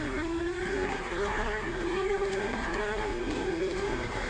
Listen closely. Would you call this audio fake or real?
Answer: fake